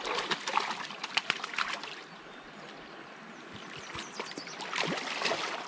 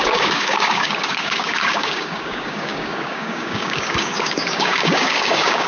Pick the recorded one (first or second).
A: first